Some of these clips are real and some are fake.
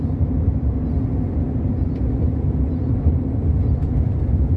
fake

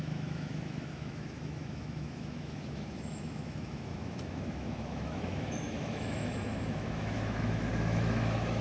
fake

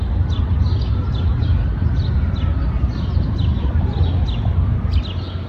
real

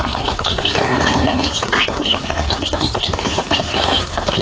fake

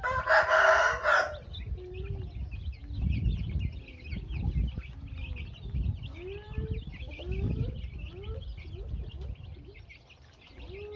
real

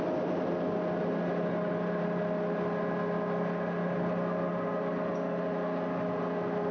real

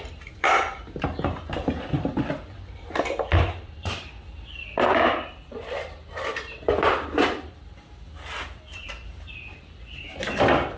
fake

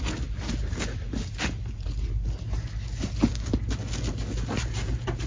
real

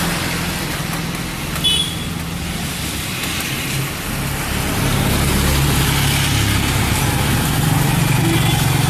real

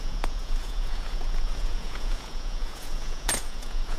fake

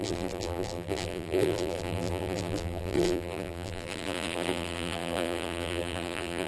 fake